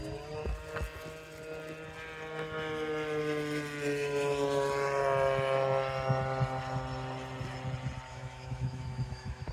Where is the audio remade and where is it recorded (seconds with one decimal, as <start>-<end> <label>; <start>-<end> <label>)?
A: 0.0-8.1 recorded; 8.1-9.5 remade